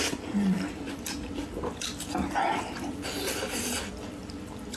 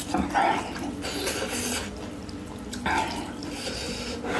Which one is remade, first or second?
first